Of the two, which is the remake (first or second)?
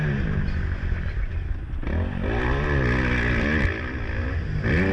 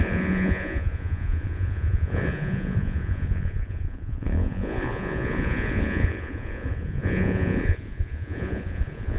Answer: second